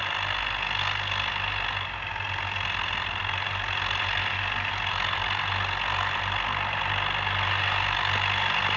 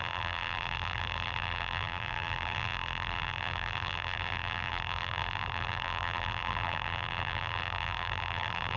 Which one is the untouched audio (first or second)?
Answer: first